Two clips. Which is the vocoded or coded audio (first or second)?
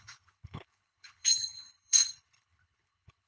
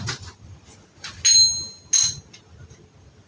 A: first